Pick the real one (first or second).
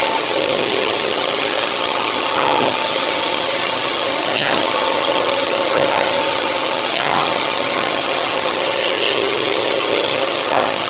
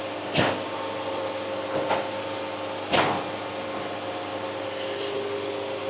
second